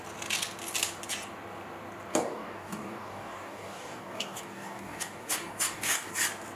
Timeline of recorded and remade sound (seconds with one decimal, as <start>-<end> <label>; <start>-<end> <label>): 0.0-2.1 recorded; 2.1-6.1 remade; 6.1-6.6 recorded